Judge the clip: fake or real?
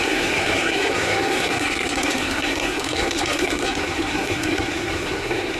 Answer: fake